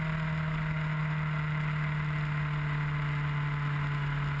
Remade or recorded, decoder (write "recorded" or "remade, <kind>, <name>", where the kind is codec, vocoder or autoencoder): recorded